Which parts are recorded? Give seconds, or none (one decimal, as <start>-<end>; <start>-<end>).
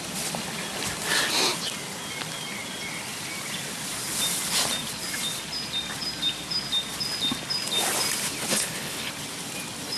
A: 0.0-8.4; 9.1-10.0